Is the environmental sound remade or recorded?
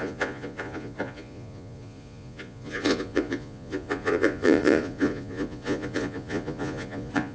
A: remade